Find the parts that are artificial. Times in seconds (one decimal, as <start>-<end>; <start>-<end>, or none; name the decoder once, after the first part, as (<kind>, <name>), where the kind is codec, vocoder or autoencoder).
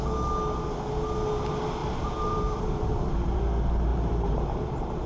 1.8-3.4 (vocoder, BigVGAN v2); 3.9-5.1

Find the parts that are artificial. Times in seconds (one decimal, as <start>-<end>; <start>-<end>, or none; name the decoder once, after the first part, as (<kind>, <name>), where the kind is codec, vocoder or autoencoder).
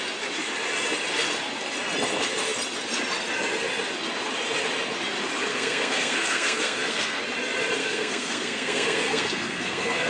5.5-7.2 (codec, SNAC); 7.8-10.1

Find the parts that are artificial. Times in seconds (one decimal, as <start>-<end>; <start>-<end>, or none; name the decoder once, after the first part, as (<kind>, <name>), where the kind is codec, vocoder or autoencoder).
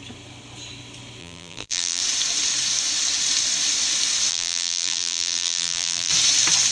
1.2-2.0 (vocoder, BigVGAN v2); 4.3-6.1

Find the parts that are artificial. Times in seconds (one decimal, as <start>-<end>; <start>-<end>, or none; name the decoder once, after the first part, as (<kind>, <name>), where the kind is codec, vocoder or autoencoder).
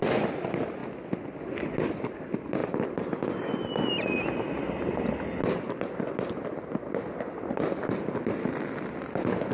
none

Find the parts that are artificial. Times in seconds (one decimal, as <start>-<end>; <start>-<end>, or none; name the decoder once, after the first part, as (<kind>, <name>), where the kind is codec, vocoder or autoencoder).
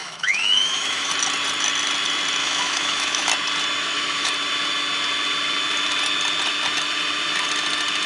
0.0-1.1 (autoencoder, DAC-VAE); 2.4-3.3; 3.8-4.3